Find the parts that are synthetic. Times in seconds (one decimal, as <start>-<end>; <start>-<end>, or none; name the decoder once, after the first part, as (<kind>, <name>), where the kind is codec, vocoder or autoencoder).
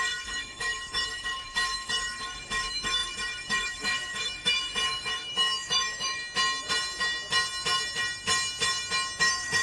0.0-6.2 (autoencoder, DAC-VAE); 9.2-9.6